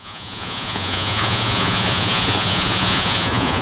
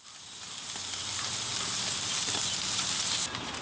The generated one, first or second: first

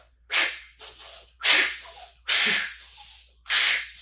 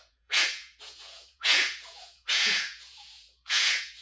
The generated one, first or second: second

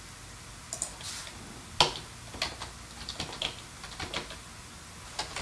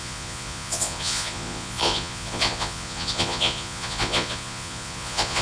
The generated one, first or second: second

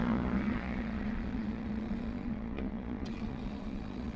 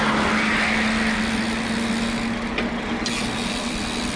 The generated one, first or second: first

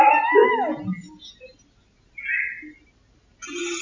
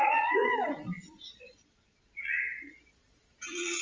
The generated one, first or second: second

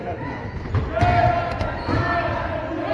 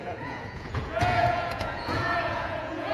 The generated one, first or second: second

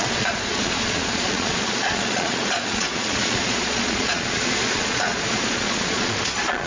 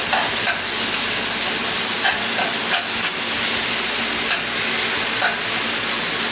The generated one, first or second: first